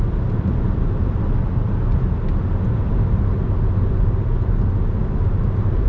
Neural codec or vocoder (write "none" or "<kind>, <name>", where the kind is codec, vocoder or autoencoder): none